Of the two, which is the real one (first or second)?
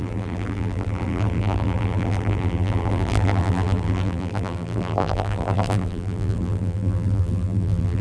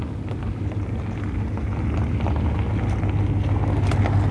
second